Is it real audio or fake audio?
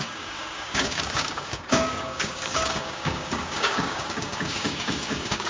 fake